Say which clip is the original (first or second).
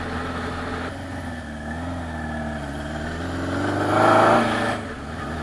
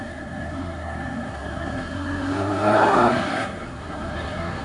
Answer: first